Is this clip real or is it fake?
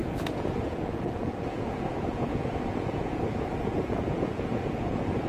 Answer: fake